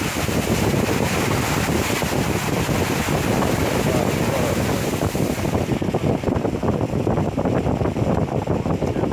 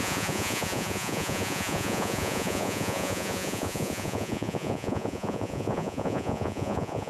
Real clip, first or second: first